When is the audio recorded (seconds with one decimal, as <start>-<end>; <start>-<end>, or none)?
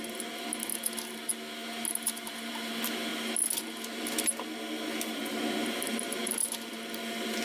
0.0-7.4